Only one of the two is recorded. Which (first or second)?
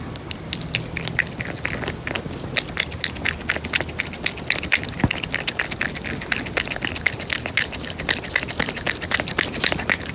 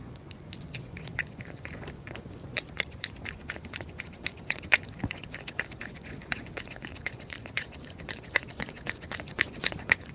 first